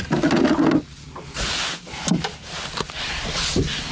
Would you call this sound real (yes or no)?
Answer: yes